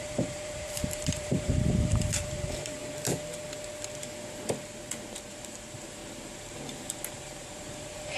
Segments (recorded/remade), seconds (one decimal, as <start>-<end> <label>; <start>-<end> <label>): 0.0-2.8 remade; 2.8-5.3 recorded; 5.3-6.0 remade; 6.0-7.1 recorded; 7.1-8.2 remade

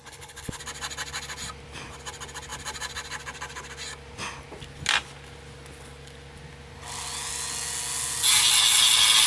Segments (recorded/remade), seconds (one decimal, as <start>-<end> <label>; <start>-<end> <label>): 0.0-0.6 remade; 0.6-9.3 recorded